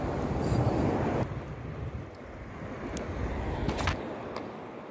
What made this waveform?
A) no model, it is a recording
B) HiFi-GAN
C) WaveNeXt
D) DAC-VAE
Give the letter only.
A